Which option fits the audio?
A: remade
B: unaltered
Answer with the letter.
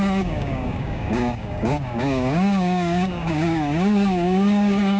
A